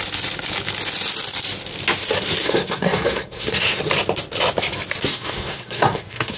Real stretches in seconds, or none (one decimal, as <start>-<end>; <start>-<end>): 0.0-2.4; 3.8-5.1